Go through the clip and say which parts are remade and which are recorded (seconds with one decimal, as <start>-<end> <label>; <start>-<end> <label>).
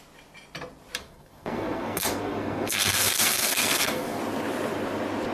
0.0-1.0 recorded; 1.0-4.2 remade; 4.2-5.3 recorded